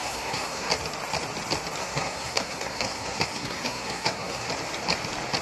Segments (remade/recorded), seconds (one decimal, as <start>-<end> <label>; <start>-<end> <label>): 0.0-0.7 remade; 0.7-1.8 recorded; 1.8-4.5 remade; 4.5-5.4 recorded